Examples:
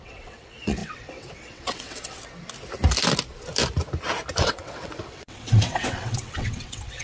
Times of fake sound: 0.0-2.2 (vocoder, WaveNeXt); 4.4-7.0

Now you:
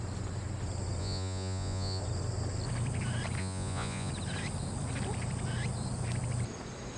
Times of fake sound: 1.0-2.0 (vocoder, Vocos); 3.4-4.1

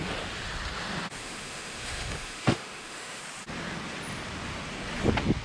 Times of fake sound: 1.2-3.2 (autoencoder, DAC-VAE)

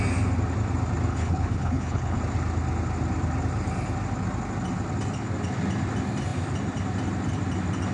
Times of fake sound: 1.1-2.2 (codec, HILCodec)

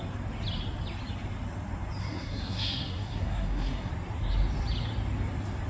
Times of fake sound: 2.0-3.9 (codec, SNAC)

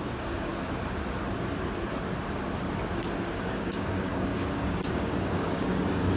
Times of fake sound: 0.0-0.5 (codec, DAC); 3.3-6.2

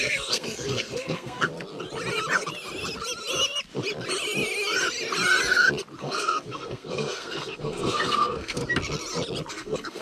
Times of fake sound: 0.0-1.5 (codec, SNAC); 6.0-8.6; 9.5-10.0

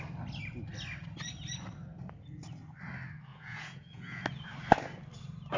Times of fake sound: 3.3-4.2 (vocoder, Vocos)